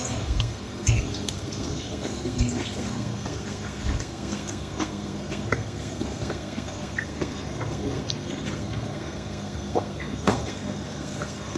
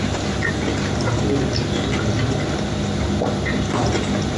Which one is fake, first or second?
first